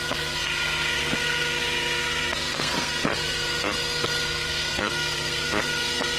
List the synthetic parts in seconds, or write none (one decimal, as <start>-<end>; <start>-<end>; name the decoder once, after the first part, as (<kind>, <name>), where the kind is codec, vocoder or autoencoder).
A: 0.0-6.2 (codec, SNAC)